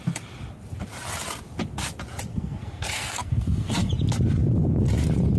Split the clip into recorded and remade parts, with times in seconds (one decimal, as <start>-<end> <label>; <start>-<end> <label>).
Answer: 0.0-2.3 recorded; 2.3-3.9 remade; 3.9-5.4 recorded